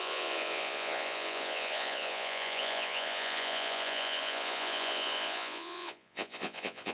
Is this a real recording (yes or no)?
no